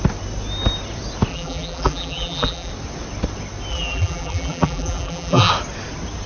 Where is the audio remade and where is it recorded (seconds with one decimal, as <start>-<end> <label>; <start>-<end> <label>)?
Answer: 0.0-1.3 recorded; 1.3-2.7 remade; 2.7-3.7 recorded; 3.7-5.5 remade; 5.5-6.3 recorded